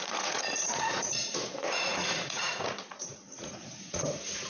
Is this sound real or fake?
fake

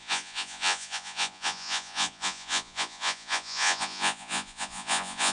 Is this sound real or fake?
fake